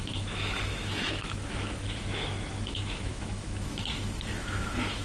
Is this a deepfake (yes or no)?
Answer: yes